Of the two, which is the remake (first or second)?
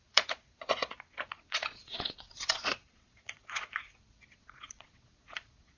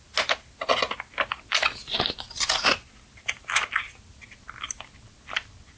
first